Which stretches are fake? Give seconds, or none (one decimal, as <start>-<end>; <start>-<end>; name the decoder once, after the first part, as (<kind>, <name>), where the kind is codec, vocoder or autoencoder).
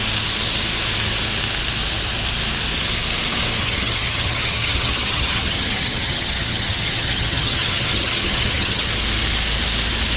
3.6-8.9 (vocoder, HiFi-GAN)